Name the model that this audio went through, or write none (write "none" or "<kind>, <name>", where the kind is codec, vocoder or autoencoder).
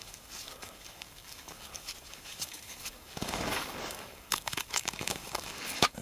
codec, DAC